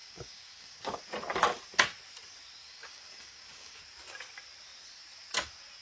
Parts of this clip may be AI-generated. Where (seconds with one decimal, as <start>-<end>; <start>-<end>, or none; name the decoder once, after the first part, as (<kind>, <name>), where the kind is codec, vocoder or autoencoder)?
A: 0.0-1.0 (codec, DAC); 2.6-3.8